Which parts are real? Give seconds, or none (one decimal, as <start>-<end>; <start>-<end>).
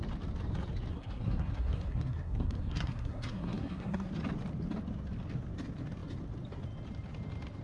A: 0.0-0.9; 4.1-7.6